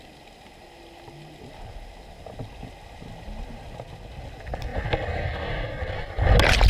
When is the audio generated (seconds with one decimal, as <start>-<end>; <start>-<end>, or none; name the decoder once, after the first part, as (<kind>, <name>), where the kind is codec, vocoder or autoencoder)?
none